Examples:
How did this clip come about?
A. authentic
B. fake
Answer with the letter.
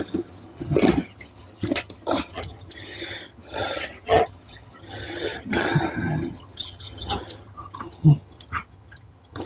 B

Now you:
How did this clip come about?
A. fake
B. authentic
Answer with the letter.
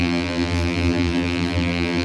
A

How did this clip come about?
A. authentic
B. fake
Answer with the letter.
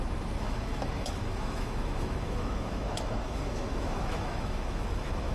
B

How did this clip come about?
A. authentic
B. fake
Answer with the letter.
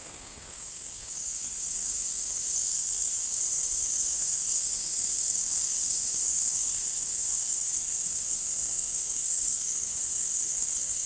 B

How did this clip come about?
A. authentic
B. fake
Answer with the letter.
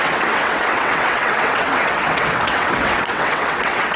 B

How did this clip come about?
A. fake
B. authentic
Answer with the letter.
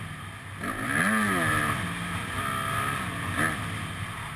B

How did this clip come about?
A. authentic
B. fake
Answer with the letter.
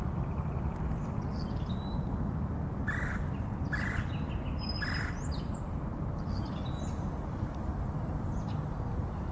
A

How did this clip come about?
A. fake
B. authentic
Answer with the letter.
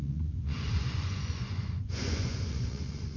A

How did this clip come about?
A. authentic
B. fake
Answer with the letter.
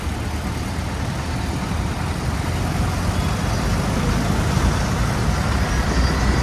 A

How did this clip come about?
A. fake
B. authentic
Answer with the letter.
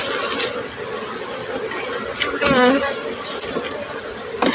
B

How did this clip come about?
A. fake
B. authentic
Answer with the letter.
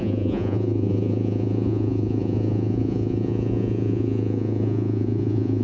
A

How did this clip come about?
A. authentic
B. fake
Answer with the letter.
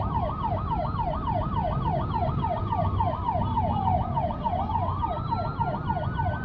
A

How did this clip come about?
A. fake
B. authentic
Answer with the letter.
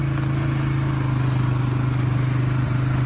B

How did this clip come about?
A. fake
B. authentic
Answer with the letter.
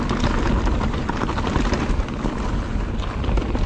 B